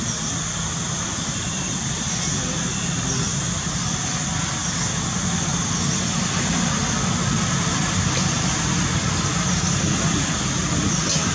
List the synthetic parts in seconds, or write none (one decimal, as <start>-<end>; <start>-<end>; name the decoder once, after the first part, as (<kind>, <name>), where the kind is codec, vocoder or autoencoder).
none